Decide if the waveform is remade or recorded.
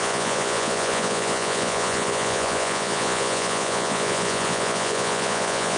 remade